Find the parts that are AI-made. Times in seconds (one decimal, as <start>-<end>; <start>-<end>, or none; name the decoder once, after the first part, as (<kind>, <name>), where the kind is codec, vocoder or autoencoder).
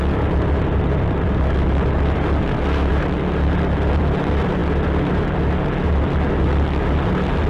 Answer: none